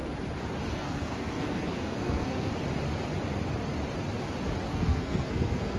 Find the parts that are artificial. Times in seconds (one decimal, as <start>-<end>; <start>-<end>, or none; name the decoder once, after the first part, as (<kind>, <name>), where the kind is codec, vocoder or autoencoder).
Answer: 0.7-2.5 (codec, SNAC); 4.7-5.8